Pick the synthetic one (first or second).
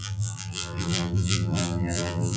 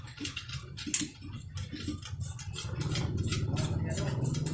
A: first